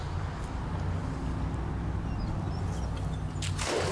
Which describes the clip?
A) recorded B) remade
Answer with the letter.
A